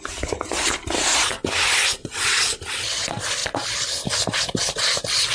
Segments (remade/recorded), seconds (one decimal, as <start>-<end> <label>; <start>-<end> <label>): 0.0-2.0 recorded; 2.0-2.6 remade; 2.6-5.3 recorded